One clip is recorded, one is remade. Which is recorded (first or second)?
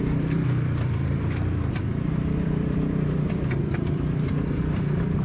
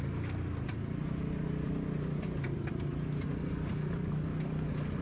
second